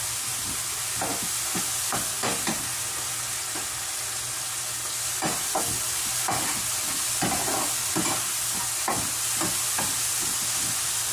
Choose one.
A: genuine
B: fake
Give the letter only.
A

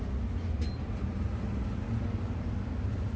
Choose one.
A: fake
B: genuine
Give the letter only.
B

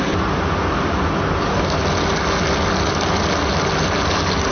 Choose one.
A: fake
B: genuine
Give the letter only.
B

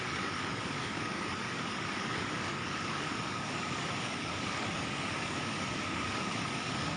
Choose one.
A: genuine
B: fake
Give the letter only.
B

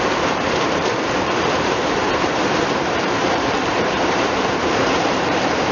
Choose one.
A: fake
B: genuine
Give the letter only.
A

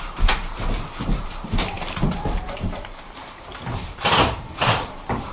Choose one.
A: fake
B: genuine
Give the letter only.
A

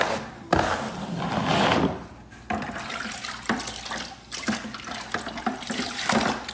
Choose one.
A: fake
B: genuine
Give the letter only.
B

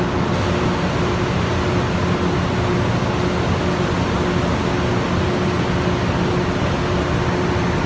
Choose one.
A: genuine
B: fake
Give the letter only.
A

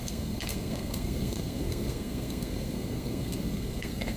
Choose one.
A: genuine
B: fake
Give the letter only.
B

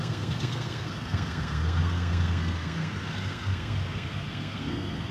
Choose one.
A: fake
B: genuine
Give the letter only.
A